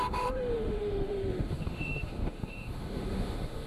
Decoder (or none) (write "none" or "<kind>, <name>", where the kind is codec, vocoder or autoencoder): autoencoder, DAC-VAE